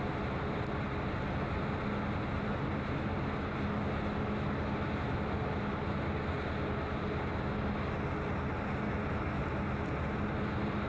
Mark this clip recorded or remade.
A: recorded